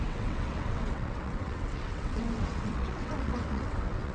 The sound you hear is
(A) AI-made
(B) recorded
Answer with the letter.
A